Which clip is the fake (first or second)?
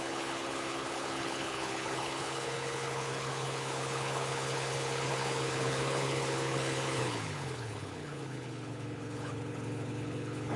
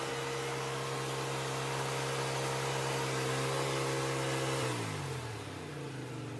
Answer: first